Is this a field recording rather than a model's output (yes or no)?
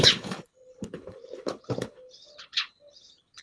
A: no